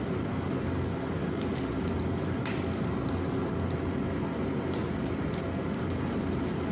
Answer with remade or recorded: recorded